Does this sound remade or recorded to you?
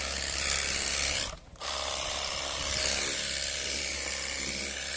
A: recorded